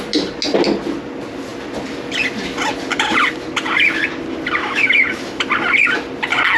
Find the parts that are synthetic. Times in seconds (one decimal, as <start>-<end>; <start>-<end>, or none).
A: 4.6-5.4